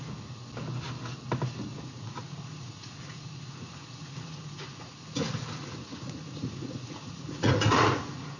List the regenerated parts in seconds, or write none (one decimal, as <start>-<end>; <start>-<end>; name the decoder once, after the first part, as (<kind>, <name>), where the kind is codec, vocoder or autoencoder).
1.7-5.0 (vocoder, Vocos); 5.6-8.4